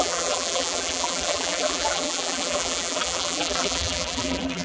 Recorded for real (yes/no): no